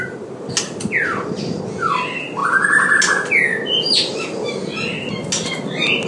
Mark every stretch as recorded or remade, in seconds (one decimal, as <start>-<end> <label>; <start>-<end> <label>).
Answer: 0.0-6.1 recorded